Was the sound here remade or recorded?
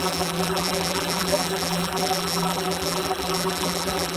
remade